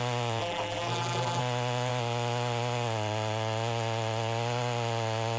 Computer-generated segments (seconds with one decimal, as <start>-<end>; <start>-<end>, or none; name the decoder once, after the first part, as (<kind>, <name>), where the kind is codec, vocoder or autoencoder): 0.4-1.4 (vocoder, BigVGAN v2)